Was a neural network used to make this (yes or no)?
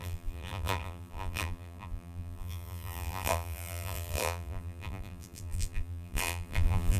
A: yes